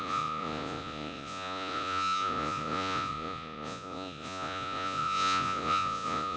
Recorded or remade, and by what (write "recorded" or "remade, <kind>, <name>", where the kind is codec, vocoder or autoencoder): remade, vocoder, Vocos